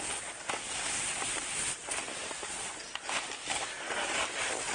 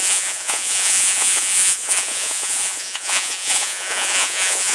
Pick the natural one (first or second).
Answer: first